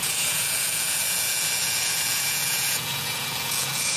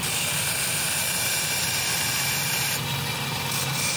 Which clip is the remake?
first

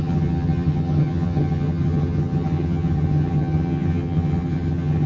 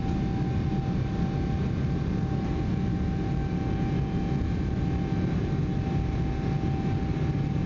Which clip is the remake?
first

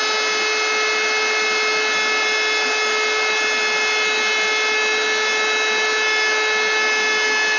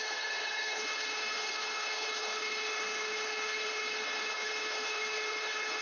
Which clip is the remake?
second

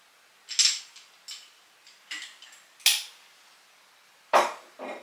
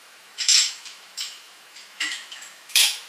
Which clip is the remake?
second